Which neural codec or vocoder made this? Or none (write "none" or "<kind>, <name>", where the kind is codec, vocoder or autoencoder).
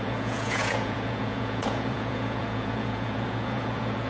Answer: vocoder, Vocos